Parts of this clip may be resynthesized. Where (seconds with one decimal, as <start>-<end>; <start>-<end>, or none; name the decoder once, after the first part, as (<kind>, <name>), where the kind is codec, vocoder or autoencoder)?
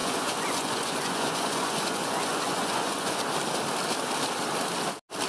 0.0-3.2 (vocoder, Vocos)